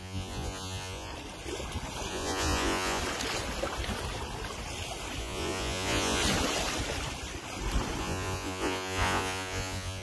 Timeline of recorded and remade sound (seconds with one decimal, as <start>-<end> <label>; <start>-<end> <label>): 0.0-1.1 remade; 1.1-2.1 recorded; 2.1-3.0 remade; 3.0-5.2 recorded; 5.2-6.2 remade; 6.2-8.0 recorded; 8.0-10.0 remade